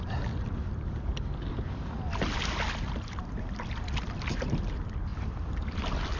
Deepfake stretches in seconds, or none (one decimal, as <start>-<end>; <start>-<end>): none